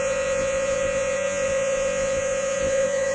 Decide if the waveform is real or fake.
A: fake